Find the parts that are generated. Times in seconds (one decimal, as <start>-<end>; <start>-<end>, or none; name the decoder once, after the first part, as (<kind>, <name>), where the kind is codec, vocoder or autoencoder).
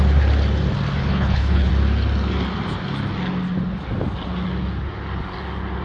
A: 1.0-1.7 (codec, HILCodec)